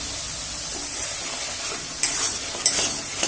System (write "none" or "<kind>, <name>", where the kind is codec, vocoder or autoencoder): none